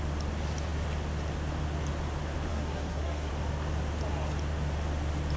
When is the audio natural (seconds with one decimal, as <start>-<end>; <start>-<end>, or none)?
0.0-2.5; 3.3-5.4